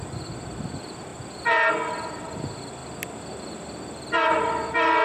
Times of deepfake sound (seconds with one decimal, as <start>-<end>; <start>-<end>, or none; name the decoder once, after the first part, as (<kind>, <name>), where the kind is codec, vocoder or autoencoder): none